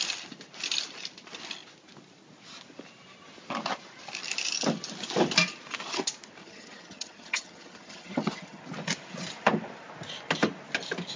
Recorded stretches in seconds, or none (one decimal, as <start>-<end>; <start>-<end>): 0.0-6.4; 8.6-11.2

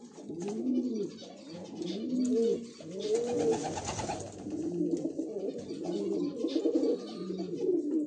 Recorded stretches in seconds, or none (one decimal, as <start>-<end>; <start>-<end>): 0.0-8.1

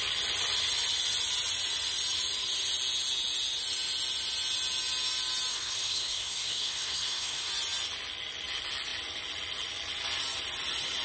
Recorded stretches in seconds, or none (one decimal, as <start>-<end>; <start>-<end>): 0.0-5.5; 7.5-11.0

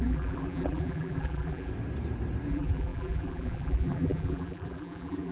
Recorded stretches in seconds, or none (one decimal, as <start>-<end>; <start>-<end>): 1.7-2.5

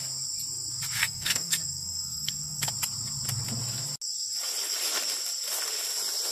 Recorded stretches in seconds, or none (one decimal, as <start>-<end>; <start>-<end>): 0.0-1.0; 2.7-6.3